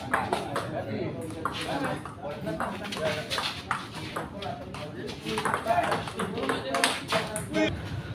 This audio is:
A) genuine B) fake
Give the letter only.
A